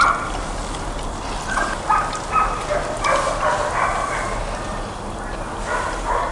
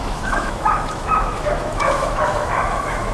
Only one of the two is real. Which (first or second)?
first